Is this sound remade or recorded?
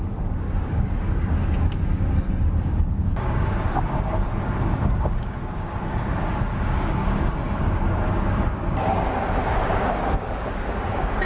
remade